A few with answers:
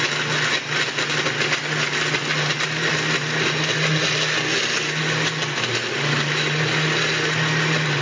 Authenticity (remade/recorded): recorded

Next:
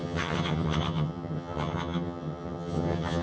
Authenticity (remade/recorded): remade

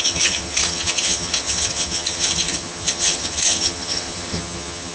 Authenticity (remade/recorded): remade